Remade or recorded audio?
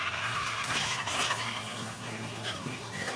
remade